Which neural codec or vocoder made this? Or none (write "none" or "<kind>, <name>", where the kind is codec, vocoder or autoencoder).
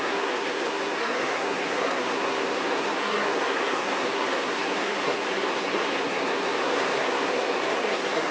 codec, SNAC